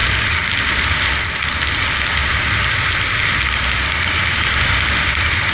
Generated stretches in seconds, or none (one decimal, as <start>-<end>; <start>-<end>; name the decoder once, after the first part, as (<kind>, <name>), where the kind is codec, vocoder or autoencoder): none